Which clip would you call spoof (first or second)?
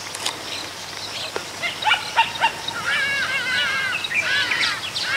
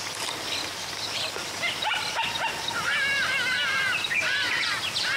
second